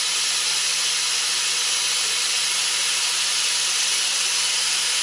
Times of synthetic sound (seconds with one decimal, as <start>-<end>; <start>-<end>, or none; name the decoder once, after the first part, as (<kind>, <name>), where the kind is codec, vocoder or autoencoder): none